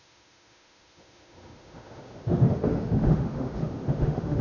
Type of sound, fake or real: fake